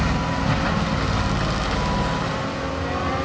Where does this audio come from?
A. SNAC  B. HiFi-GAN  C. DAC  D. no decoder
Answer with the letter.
D